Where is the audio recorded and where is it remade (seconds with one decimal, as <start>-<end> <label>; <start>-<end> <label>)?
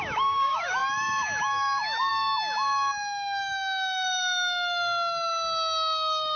0.0-6.4 remade